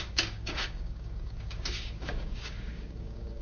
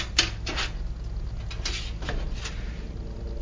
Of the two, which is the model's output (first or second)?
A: first